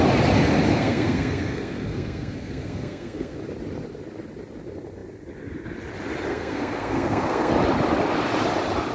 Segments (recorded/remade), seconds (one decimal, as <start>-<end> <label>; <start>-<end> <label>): 0.0-0.7 recorded; 0.7-3.4 remade; 3.4-6.3 recorded; 6.3-7.5 remade; 7.5-8.9 recorded